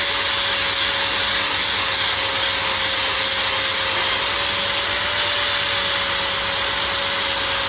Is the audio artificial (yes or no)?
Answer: no